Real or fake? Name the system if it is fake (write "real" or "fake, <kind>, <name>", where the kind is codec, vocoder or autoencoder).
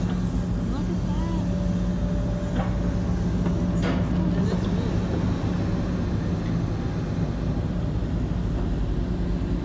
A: real